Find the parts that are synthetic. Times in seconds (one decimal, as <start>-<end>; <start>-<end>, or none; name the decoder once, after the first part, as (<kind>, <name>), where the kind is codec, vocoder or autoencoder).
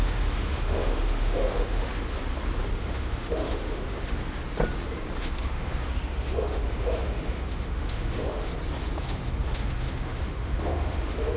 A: 0.0-1.9 (autoencoder, DAC-VAE); 2.8-4.2; 5.2-8.5; 9.0-11.4